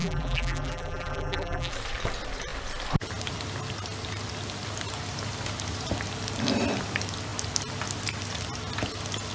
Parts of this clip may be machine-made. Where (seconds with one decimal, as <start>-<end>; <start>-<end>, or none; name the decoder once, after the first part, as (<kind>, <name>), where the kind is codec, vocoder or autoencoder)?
0.0-1.7 (vocoder, BigVGAN v2)